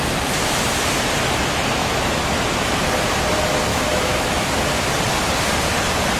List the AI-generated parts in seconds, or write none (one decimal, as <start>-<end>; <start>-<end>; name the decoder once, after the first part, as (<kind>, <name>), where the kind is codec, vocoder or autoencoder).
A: 1.8-2.6 (autoencoder, DAC-VAE); 3.7-4.6